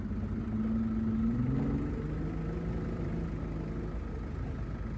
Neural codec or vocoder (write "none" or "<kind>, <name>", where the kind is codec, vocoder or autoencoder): none